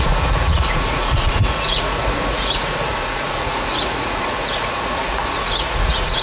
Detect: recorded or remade remade